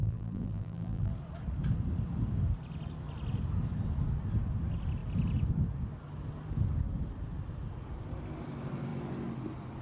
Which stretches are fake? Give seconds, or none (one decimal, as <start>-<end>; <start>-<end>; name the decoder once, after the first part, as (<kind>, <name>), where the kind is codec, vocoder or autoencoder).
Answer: 0.0-1.1 (vocoder, BigVGAN v2)